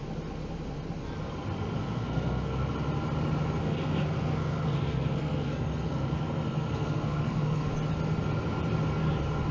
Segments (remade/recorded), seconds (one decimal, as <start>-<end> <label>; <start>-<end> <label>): 0.0-1.8 recorded; 1.8-2.7 remade; 2.7-3.6 recorded; 3.6-7.7 remade; 7.7-9.5 recorded